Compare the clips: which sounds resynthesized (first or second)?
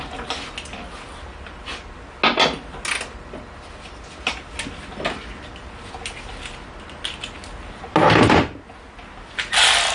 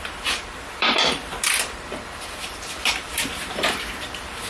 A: second